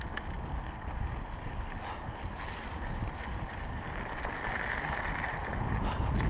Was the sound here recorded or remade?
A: recorded